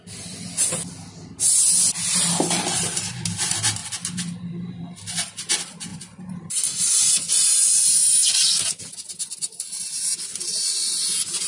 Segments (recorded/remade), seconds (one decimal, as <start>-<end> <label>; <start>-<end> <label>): 0.0-5.9 recorded; 5.9-7.3 remade; 7.3-11.5 recorded